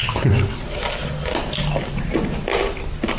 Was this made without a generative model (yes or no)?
yes